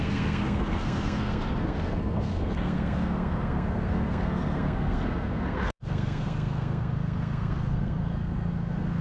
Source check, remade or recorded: remade